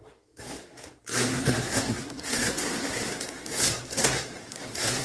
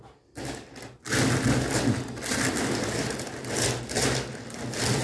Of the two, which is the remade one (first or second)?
first